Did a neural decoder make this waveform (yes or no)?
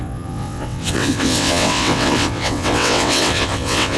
yes